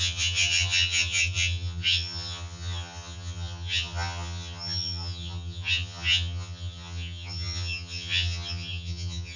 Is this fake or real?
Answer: fake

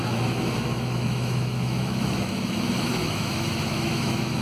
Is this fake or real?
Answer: fake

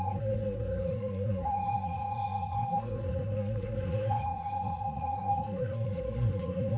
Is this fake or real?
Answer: fake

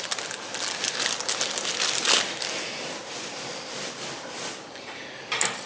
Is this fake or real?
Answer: real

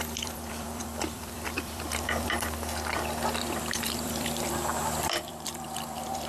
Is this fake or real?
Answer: fake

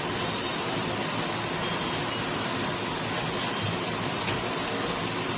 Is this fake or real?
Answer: real